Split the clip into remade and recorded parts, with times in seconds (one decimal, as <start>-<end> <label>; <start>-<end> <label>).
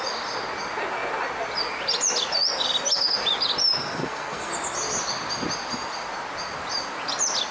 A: 0.0-3.8 recorded; 3.8-4.5 remade; 4.5-7.5 recorded